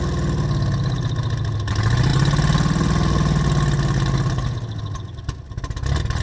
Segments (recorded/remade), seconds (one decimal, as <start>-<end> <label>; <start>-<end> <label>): 0.0-6.2 recorded